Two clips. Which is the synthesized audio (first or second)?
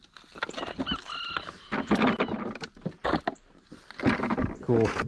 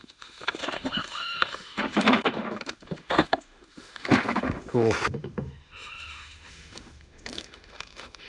second